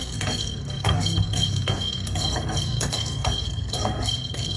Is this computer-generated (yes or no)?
yes